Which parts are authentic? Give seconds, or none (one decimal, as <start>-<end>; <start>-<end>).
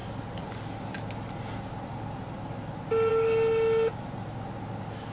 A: 0.0-5.1